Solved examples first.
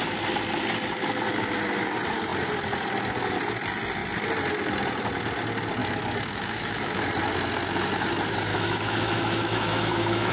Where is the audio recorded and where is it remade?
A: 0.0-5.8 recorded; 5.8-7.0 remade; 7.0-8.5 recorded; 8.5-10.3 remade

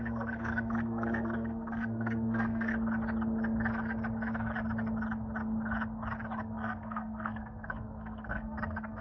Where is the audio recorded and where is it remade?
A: 0.0-2.7 remade; 2.7-6.4 recorded; 6.4-9.0 remade

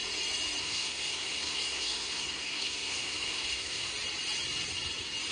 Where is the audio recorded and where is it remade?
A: 0.0-0.6 recorded; 0.6-3.9 remade; 3.9-5.3 recorded

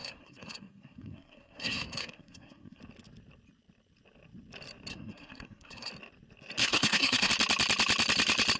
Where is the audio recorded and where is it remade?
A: 0.0-2.8 remade; 2.8-4.9 recorded; 4.9-5.9 remade; 5.9-6.6 recorded; 6.6-7.3 remade; 7.3-8.6 recorded

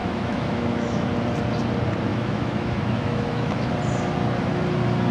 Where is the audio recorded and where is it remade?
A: 0.0-1.1 remade; 1.1-2.1 recorded; 2.1-3.7 remade; 3.7-5.1 recorded

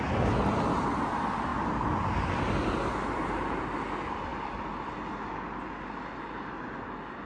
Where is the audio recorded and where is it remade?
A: 0.0-7.3 recorded